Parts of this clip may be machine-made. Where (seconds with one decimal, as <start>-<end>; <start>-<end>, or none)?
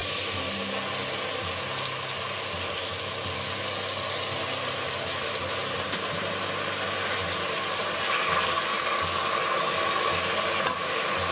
none